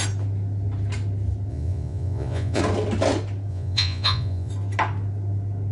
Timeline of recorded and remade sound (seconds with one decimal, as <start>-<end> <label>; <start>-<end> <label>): 0.0-1.5 recorded; 1.5-2.6 remade; 2.6-3.5 recorded; 3.5-4.5 remade; 4.5-5.7 recorded